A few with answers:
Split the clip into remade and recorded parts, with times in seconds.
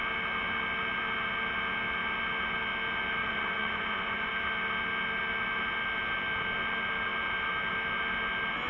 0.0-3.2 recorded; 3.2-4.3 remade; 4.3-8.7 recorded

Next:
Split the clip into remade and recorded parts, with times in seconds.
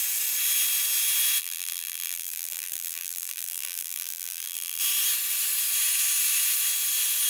0.0-1.4 recorded; 1.4-4.8 remade; 4.8-7.3 recorded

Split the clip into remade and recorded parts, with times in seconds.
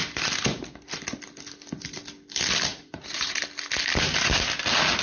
0.0-2.7 recorded; 2.7-3.4 remade; 3.4-5.0 recorded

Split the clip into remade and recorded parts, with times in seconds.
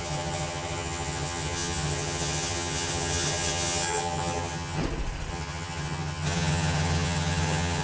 0.0-4.8 remade; 4.8-5.3 recorded; 5.3-7.8 remade